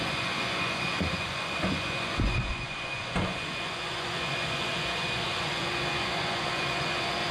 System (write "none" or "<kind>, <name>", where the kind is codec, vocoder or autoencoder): vocoder, Vocos